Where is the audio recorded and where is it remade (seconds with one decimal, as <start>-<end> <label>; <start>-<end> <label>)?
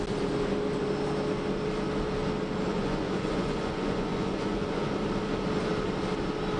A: 0.0-2.7 recorded; 2.7-4.9 remade; 4.9-6.6 recorded